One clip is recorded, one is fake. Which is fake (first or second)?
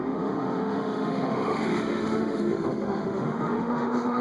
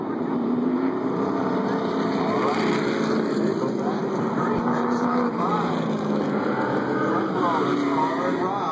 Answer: first